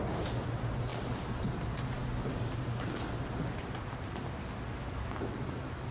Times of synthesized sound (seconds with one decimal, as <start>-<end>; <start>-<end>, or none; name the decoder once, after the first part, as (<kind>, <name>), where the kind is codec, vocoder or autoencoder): none